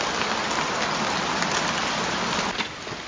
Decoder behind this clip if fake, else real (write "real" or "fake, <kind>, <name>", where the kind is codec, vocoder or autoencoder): real